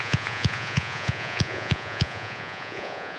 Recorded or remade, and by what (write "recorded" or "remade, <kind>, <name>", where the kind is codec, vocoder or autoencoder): remade, vocoder, Vocos